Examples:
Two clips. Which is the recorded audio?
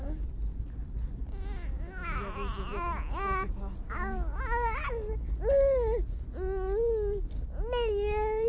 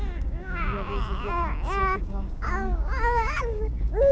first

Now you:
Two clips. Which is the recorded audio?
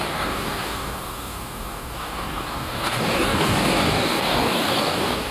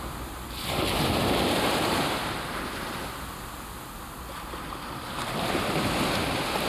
second